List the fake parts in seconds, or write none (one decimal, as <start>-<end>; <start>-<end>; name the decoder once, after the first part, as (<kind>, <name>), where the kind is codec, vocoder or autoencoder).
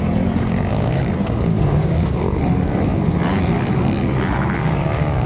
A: 0.7-2.4 (codec, DAC); 4.6-5.3